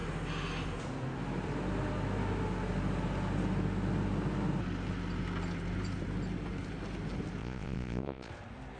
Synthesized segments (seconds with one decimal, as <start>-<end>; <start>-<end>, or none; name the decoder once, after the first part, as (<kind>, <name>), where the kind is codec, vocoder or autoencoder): 7.4-8.3 (vocoder, Vocos)